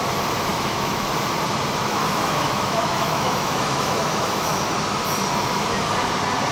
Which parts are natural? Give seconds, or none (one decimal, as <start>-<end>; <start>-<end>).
0.0-0.5; 1.1-1.9; 4.6-6.5

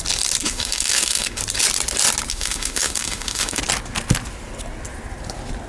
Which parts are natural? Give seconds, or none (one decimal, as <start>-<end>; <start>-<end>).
0.0-0.4; 1.4-2.3; 3.6-5.7

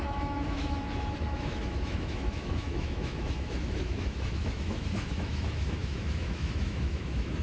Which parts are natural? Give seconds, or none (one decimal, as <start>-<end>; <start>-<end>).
none

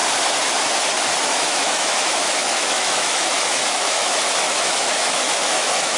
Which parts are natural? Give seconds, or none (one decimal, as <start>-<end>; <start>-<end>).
0.0-1.2

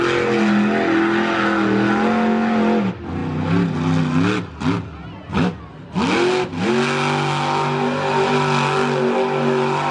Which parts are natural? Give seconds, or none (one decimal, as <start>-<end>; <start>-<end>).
0.0-9.9

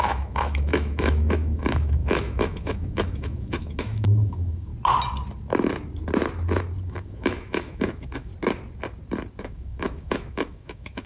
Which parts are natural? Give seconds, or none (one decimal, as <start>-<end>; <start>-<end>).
4.7-6.9; 8.3-9.4